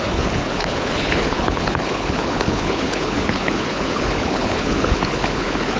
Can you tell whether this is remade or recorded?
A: remade